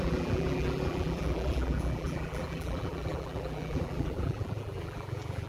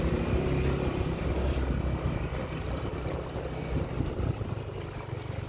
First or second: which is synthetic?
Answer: first